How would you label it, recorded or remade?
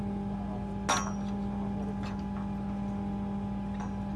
recorded